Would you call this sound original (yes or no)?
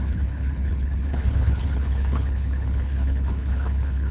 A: no